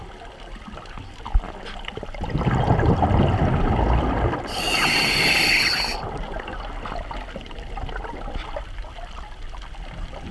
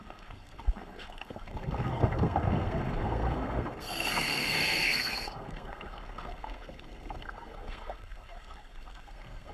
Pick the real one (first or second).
first